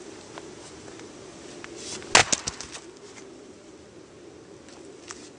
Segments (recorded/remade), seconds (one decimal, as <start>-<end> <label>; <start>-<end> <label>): 0.0-5.4 recorded